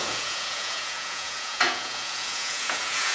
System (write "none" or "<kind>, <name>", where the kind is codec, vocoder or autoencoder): vocoder, Vocos